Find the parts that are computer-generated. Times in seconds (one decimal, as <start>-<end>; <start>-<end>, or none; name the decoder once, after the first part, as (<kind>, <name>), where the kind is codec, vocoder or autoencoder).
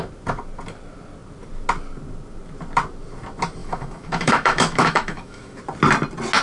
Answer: 3.6-5.6 (autoencoder, DAC-VAE)